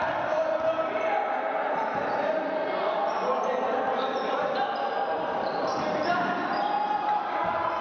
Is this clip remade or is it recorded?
recorded